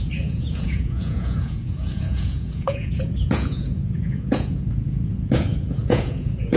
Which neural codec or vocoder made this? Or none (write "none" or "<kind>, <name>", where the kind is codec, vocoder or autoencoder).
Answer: vocoder, Vocos